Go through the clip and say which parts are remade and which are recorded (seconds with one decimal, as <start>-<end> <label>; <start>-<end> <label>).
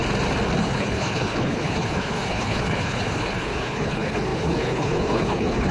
0.0-0.6 recorded; 0.6-5.7 remade